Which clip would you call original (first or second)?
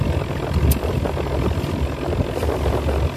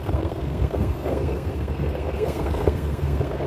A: first